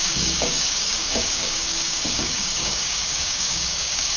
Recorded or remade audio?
remade